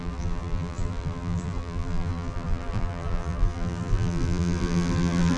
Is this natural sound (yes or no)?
no